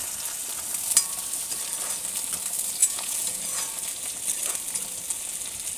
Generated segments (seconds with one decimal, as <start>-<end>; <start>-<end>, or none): 2.8-3.4